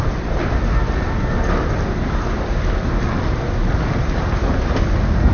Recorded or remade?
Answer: recorded